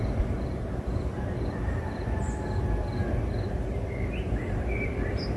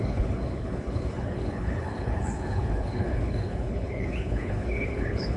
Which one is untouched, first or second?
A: first